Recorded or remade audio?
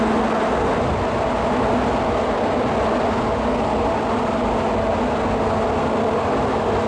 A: recorded